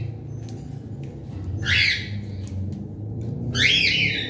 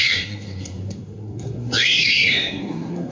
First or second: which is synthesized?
second